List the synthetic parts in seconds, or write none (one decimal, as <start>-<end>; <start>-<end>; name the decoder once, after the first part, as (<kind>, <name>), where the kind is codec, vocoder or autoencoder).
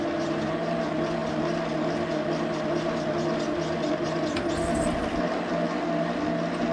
none